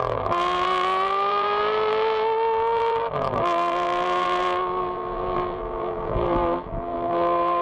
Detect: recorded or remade remade